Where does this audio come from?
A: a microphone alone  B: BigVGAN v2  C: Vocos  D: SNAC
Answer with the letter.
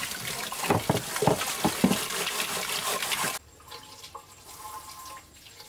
A